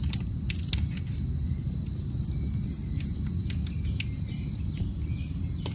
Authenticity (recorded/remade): recorded